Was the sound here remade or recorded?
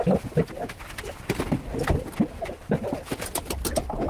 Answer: recorded